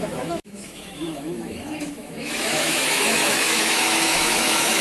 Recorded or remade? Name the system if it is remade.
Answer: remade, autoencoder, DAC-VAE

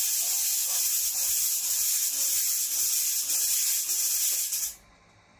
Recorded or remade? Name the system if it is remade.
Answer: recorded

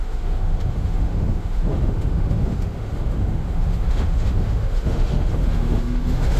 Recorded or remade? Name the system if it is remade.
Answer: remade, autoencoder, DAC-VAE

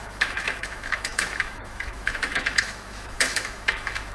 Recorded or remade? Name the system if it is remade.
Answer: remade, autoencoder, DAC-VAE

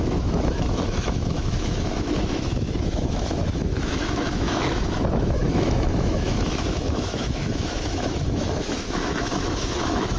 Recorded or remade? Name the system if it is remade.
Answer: remade, autoencoder, DAC-VAE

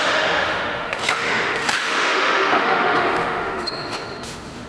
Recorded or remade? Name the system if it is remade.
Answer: remade, autoencoder, DAC-VAE